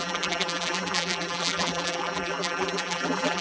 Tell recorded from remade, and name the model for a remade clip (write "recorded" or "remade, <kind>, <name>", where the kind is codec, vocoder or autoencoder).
remade, vocoder, BigVGAN v2